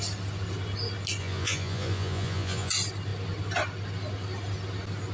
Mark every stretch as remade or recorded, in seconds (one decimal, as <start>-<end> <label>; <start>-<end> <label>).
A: 0.0-1.2 recorded; 1.2-2.7 remade; 2.7-5.1 recorded